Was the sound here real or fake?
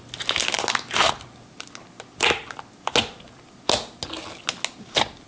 real